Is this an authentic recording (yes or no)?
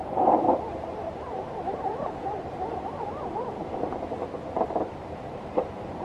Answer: no